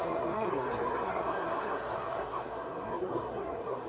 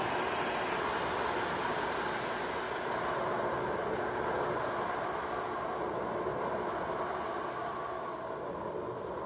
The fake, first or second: first